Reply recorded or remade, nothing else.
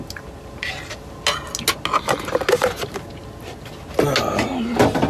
recorded